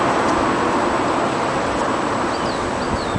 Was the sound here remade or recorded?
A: recorded